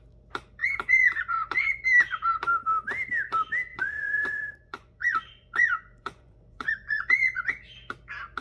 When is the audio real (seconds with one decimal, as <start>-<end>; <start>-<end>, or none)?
0.0-0.6; 1.8-3.7; 7.5-8.4